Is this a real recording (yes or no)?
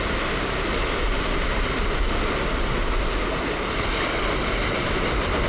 yes